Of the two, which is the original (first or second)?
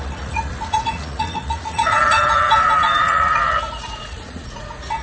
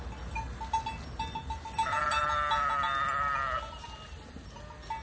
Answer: second